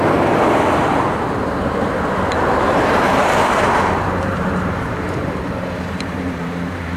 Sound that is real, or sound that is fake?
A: fake